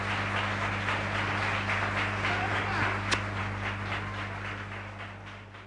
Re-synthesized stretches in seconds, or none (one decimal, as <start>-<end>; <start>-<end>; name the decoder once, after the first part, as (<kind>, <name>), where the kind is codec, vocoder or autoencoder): none